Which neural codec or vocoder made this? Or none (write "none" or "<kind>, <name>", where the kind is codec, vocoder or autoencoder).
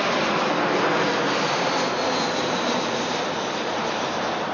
none